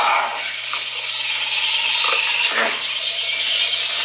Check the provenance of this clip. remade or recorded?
recorded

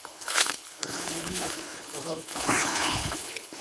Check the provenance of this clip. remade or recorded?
remade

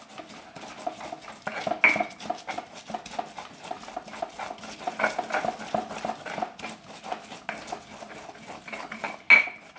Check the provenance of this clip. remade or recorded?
recorded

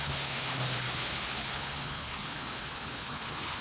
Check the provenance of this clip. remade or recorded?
remade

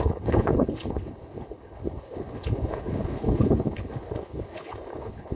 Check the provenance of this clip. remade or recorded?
remade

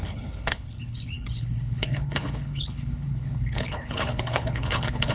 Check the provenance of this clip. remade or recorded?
remade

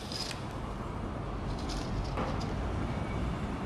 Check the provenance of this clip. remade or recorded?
recorded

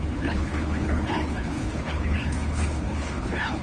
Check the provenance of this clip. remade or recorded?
remade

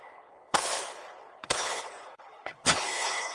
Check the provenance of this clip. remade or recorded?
remade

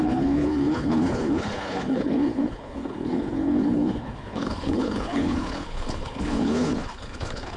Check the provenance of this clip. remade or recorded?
remade